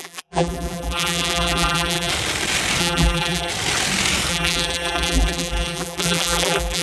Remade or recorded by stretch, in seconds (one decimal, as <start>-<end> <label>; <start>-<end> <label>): 0.0-2.1 remade; 2.1-2.8 recorded; 2.8-3.5 remade; 3.5-4.3 recorded; 4.3-6.8 remade